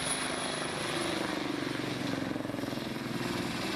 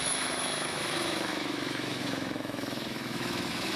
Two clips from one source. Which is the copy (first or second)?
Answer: second